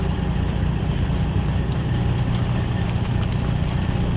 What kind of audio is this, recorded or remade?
remade